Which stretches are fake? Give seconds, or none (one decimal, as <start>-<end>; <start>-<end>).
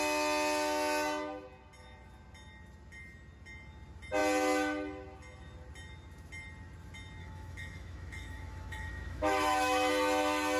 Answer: 7.2-9.9